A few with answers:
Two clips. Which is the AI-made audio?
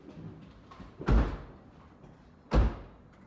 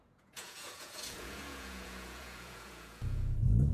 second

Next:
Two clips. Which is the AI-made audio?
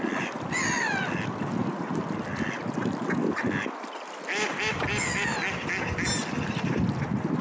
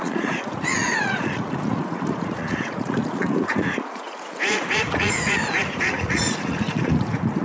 second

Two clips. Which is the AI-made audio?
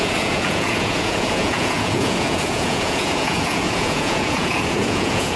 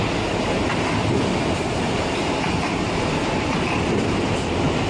first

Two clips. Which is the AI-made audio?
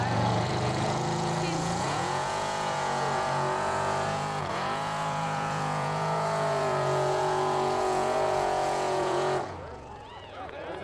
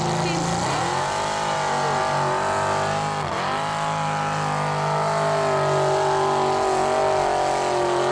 first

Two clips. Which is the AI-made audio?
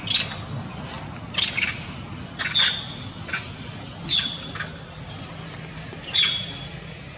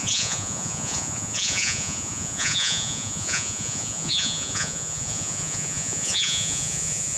second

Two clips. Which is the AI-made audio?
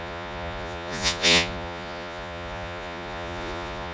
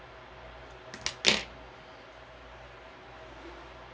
first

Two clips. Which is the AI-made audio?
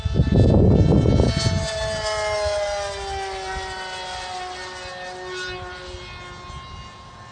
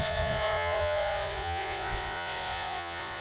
second